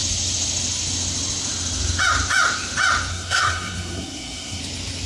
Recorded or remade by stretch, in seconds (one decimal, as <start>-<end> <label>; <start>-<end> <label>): 0.0-3.1 recorded; 3.1-4.6 remade; 4.6-5.1 recorded